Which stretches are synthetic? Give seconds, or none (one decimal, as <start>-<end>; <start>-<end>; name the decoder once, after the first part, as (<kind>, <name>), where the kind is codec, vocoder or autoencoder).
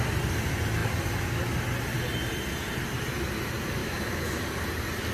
3.8-4.4 (autoencoder, DAC-VAE)